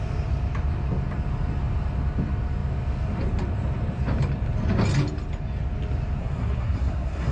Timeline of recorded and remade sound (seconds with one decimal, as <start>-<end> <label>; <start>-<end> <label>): 0.0-6.2 recorded; 6.2-7.3 remade